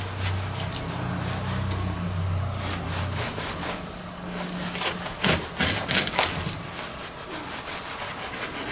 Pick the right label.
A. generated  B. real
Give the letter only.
B